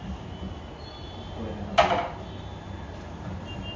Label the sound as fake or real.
real